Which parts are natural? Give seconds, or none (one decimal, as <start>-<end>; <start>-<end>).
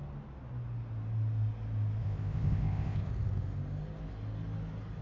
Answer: 0.0-2.0; 3.1-5.0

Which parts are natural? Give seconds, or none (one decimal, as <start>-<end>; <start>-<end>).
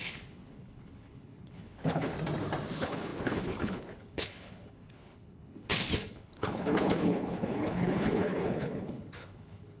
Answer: 2.1-2.7